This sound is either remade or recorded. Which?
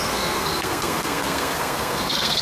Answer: remade